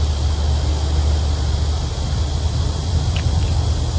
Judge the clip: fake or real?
real